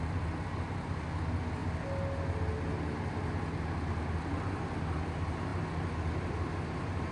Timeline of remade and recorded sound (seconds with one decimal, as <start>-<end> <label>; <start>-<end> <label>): 0.0-7.1 recorded